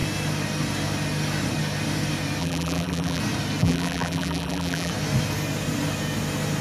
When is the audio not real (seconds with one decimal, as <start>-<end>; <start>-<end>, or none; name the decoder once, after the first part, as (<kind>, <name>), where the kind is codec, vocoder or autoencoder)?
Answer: 2.4-3.2 (vocoder, BigVGAN v2); 3.6-4.9